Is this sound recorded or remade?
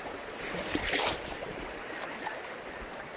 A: recorded